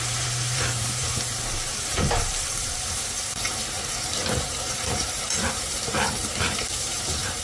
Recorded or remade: remade